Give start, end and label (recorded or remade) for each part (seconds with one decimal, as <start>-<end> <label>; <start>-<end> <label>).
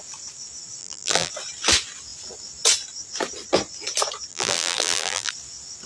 0.0-0.8 recorded; 0.8-1.3 remade; 1.3-4.3 recorded; 4.3-5.3 remade; 5.3-5.9 recorded